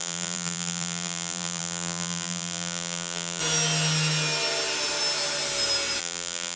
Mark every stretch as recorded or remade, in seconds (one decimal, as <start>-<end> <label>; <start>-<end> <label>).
0.0-3.4 remade; 3.4-6.0 recorded; 6.0-6.6 remade